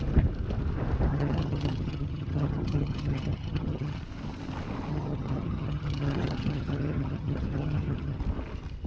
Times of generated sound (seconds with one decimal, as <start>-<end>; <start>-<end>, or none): 1.1-4.0; 4.9-8.2